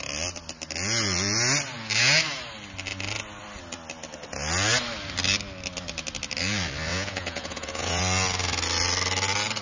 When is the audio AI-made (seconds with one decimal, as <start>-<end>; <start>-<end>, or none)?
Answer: 6.9-8.0